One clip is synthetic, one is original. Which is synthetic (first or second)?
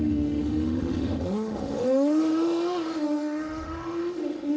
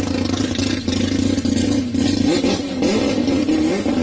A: first